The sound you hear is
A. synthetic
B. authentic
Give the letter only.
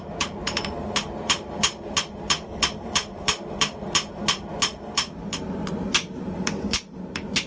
A